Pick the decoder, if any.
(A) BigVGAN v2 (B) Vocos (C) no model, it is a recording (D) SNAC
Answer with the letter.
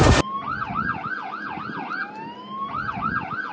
C